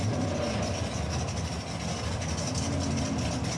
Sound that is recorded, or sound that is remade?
recorded